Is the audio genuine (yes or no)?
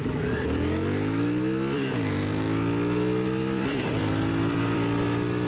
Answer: no